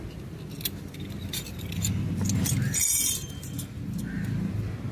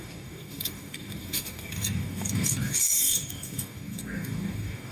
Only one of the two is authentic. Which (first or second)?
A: first